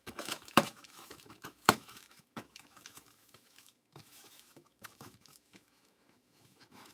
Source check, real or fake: fake